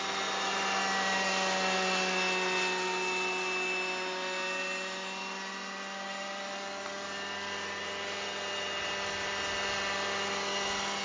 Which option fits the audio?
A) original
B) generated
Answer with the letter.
A